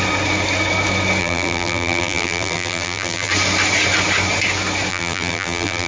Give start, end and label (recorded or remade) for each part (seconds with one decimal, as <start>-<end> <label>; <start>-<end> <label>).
0.0-1.2 recorded; 1.2-3.3 remade; 3.3-4.9 recorded; 4.9-5.9 remade